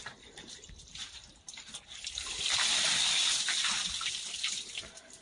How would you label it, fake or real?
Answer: real